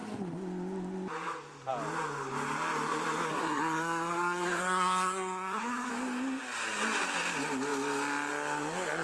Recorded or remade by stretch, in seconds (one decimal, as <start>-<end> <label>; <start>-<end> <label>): 0.0-3.3 recorded; 3.3-5.9 remade; 5.9-9.0 recorded